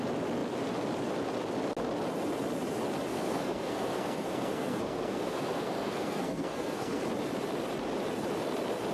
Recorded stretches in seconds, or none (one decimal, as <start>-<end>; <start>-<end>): 0.0-3.1; 7.0-8.9